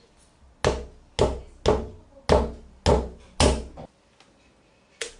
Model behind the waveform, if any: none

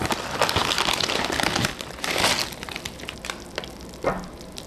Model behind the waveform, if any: none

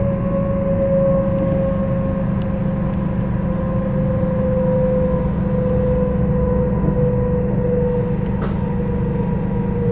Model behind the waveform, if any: none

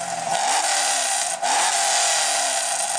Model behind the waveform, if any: none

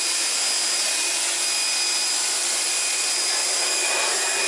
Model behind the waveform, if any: none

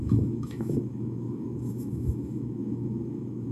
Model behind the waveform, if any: autoencoder, DAC-VAE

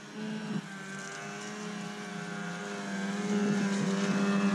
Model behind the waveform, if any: none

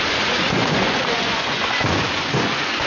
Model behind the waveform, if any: vocoder, Vocos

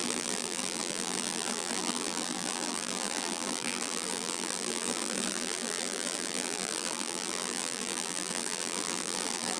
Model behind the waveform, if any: vocoder, BigVGAN v2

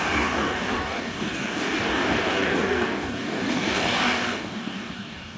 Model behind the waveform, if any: codec, DAC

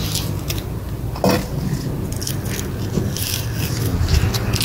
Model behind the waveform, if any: none